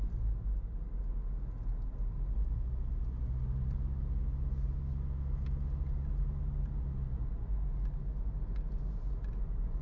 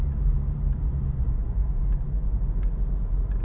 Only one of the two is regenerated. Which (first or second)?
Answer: second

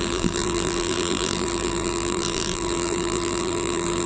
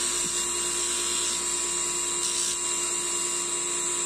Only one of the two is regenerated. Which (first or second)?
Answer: first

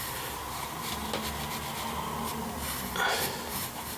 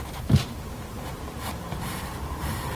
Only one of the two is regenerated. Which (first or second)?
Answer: second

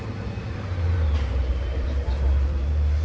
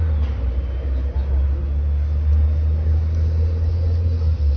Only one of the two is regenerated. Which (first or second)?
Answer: first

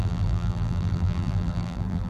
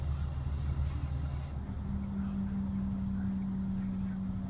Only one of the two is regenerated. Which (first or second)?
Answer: first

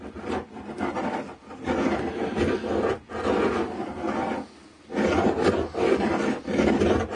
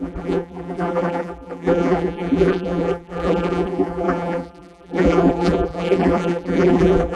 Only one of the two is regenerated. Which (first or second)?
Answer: second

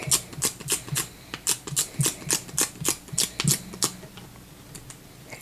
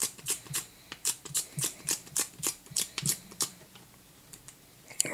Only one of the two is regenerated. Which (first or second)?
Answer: second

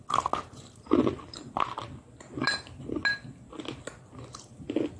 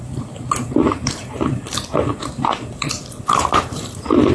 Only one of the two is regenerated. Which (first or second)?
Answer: second